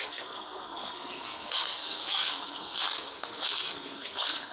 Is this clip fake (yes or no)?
yes